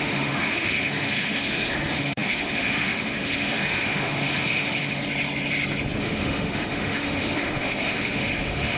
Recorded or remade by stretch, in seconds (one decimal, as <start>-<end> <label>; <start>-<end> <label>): 0.0-5.0 remade; 5.0-6.0 recorded; 6.0-8.8 remade